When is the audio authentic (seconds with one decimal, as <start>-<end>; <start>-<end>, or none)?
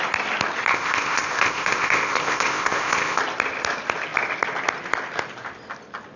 0.0-0.7; 3.2-6.2